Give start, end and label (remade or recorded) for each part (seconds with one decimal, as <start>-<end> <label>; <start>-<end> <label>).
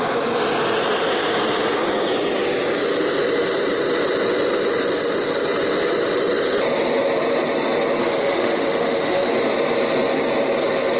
0.0-8.0 recorded; 8.0-9.3 remade; 9.3-11.0 recorded